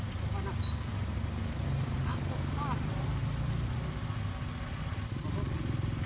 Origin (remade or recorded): recorded